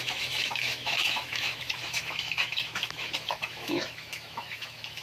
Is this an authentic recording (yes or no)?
no